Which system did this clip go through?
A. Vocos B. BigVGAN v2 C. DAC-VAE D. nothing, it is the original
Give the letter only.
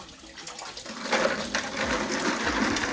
D